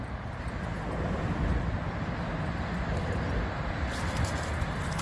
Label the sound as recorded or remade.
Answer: recorded